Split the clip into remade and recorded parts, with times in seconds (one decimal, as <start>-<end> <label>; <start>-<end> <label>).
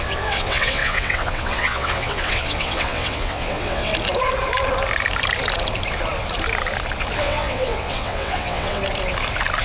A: 0.0-3.9 remade; 3.9-7.2 recorded; 7.2-8.8 remade; 8.8-9.6 recorded